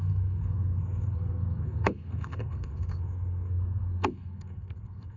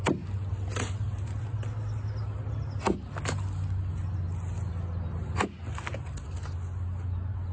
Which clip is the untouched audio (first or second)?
second